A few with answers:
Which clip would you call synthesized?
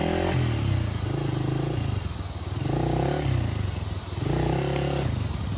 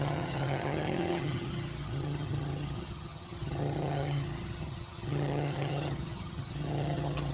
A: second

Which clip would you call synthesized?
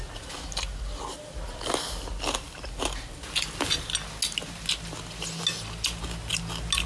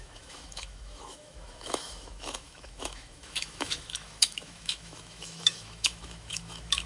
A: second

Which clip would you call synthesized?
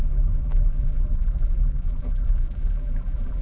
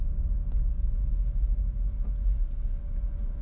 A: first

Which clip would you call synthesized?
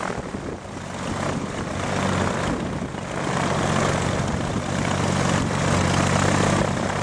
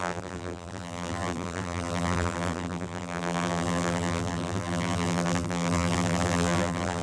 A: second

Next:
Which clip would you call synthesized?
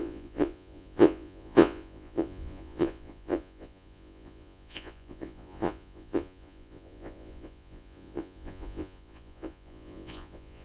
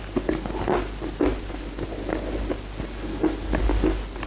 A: first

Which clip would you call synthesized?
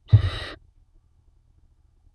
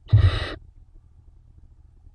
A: first